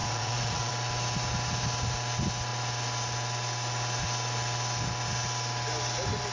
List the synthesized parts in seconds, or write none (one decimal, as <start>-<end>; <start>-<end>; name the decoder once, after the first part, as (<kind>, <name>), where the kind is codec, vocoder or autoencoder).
0.0-0.7 (vocoder, Vocos)